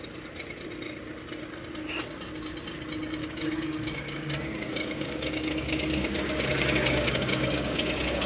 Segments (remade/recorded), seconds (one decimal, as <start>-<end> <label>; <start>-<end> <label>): 0.0-3.2 recorded; 3.2-8.3 remade

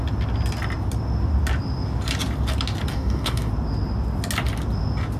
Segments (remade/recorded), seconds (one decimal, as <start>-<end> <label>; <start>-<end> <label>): 0.0-2.9 recorded; 2.9-3.5 remade; 3.5-5.2 recorded

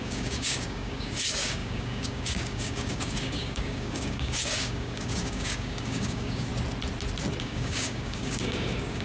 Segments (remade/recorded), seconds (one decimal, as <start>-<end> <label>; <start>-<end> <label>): 0.0-6.5 remade; 6.5-7.4 recorded; 7.4-9.0 remade

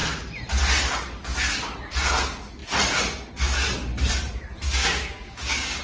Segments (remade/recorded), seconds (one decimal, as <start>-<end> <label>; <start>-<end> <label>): 0.0-4.8 recorded; 4.8-5.8 remade

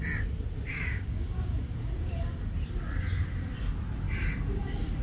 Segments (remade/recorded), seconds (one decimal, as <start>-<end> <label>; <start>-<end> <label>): 0.0-0.7 recorded; 0.7-2.4 remade; 2.4-4.2 recorded; 4.2-5.0 remade